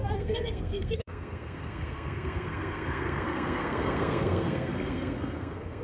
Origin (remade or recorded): remade